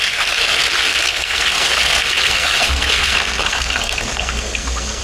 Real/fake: fake